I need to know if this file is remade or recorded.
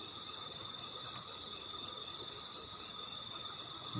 recorded